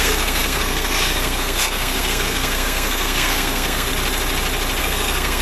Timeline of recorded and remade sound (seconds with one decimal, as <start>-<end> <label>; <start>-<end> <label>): 0.0-3.9 remade; 3.9-4.8 recorded; 4.8-5.4 remade